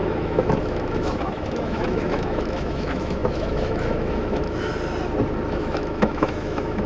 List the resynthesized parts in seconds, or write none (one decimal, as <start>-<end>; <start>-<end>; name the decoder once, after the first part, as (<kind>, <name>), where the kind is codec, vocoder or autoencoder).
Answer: 0.0-4.7 (autoencoder, DAC-VAE); 5.5-6.9